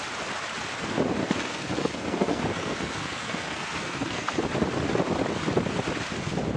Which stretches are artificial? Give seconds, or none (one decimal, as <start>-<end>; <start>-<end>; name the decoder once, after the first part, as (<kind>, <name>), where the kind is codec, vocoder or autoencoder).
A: 1.2-4.4 (codec, SNAC)